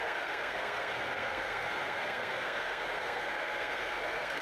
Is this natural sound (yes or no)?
no